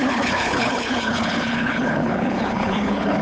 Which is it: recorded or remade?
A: remade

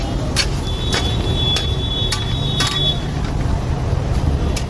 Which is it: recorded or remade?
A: recorded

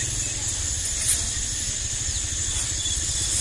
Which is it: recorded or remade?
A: recorded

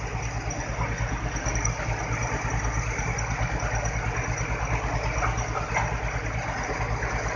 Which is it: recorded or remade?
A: recorded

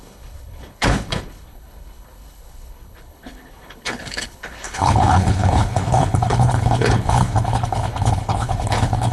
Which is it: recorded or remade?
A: remade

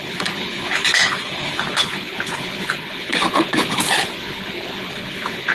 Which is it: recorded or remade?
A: remade